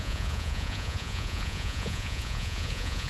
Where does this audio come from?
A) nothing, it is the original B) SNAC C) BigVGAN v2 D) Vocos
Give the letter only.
D